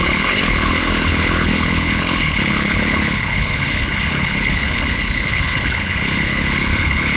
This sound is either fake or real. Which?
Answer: fake